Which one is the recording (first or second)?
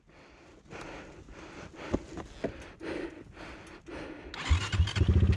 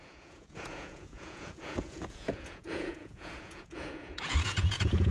first